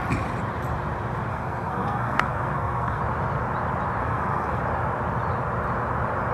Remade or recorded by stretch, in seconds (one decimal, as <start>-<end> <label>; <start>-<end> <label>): 0.0-1.3 recorded; 1.3-3.0 remade; 3.0-4.0 recorded; 4.0-4.6 remade; 4.6-6.3 recorded